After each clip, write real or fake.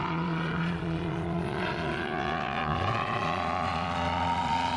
fake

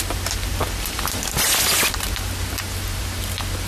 real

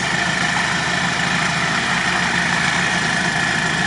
real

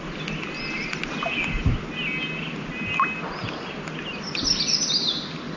real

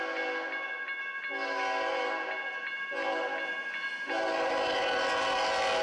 real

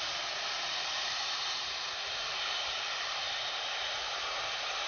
fake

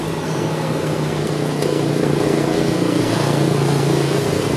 fake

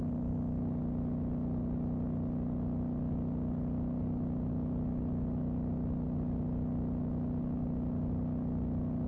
real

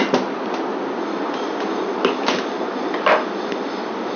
real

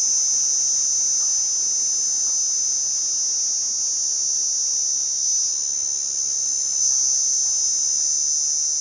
real